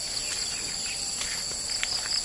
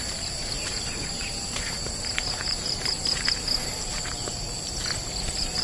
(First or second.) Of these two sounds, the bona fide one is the first